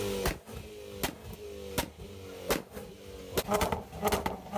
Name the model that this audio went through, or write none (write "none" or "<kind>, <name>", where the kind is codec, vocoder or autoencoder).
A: none